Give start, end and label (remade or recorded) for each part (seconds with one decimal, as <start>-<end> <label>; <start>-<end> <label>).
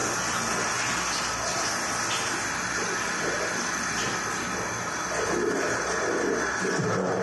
0.0-7.2 recorded